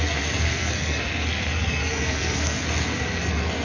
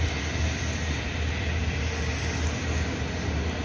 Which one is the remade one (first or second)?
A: first